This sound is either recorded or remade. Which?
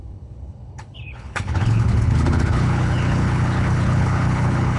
remade